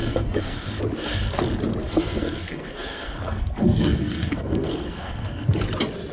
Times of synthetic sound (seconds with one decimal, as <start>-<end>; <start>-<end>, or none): 0.0-0.8; 1.8-5.5